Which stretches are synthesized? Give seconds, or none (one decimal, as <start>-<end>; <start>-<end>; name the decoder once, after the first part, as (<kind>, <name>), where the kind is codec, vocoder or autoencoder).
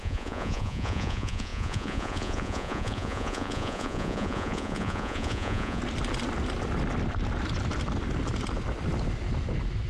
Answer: 0.0-5.8 (vocoder, Vocos)